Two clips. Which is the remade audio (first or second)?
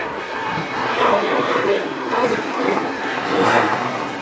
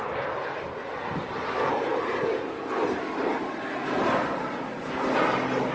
first